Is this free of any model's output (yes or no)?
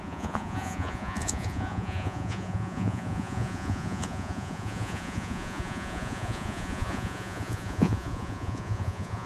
no